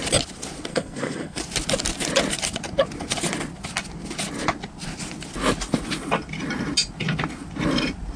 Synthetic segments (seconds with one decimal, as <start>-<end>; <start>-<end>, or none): 0.7-1.4